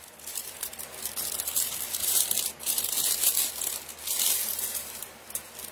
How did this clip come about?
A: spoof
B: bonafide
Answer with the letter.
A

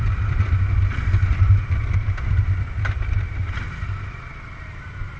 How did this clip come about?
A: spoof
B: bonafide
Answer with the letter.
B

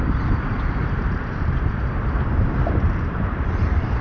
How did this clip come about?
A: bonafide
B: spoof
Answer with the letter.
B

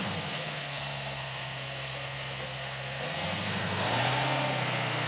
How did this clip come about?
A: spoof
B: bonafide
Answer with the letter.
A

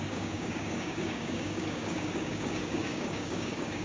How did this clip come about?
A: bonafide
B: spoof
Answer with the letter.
B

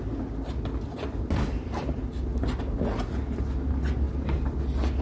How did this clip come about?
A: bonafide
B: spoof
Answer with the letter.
A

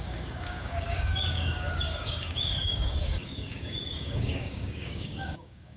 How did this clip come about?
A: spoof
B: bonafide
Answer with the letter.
A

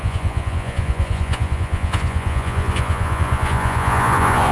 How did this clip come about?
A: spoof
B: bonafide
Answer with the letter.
A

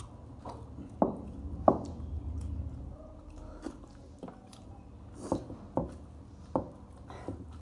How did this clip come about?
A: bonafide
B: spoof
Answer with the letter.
A